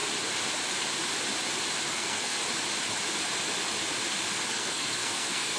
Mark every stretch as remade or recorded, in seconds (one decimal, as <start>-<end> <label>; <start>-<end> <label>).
0.0-1.9 recorded; 1.9-2.4 remade; 2.4-4.5 recorded; 4.5-5.6 remade